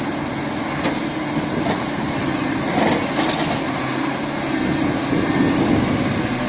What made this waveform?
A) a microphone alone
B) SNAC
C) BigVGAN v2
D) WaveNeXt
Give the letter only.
A